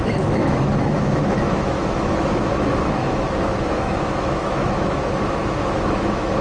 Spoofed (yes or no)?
yes